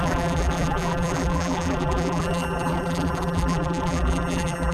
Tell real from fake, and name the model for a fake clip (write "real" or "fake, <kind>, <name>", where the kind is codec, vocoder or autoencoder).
fake, vocoder, BigVGAN v2